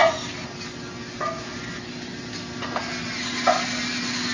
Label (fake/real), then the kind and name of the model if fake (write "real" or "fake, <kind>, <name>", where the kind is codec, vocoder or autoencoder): real